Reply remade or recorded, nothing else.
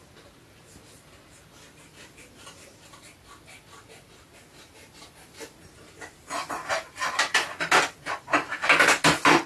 recorded